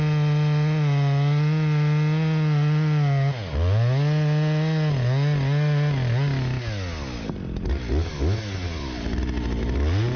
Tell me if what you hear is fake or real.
real